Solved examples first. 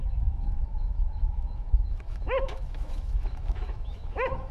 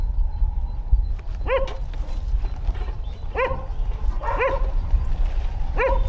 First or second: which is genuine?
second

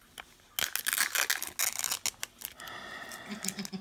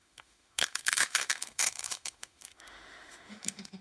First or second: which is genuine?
first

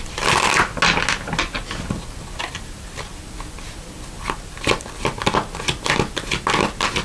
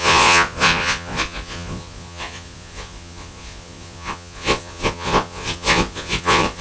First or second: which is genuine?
first